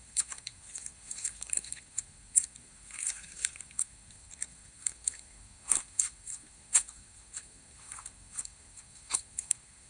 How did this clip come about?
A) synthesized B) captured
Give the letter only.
A